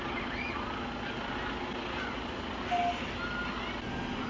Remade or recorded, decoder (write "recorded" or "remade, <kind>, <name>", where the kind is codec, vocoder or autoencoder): recorded